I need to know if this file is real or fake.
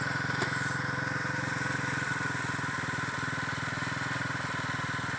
real